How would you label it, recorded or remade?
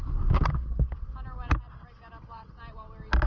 recorded